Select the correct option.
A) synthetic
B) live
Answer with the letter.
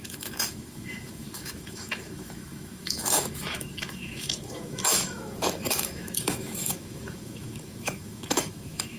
A